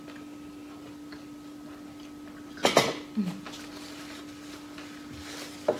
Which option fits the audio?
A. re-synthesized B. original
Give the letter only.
B